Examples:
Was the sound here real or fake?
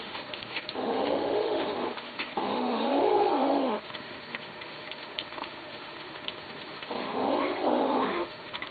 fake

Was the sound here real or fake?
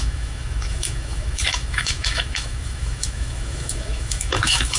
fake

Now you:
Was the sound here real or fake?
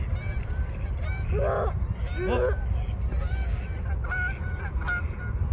real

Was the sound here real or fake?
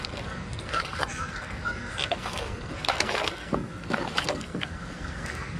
fake